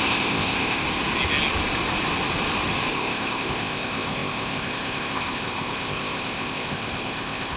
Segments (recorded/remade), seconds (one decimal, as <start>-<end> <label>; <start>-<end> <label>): 0.0-0.8 remade; 0.8-2.9 recorded; 2.9-7.6 remade